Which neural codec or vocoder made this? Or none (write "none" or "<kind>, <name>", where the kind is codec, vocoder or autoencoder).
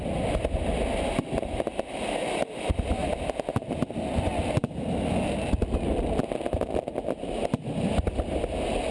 none